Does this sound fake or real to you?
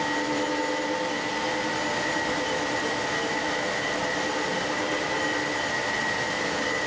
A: real